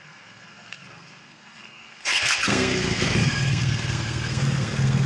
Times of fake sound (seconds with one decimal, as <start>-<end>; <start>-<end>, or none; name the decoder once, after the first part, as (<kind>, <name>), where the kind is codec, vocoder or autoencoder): 0.0-5.1 (codec, SNAC)